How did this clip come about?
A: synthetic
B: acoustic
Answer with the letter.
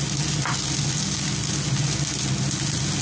B